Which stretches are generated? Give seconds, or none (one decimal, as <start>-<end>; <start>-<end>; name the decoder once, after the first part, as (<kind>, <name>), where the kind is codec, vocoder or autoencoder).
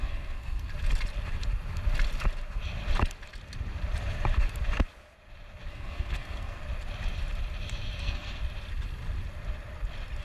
0.0-0.7 (codec, SNAC); 5.7-6.6; 8.0-8.4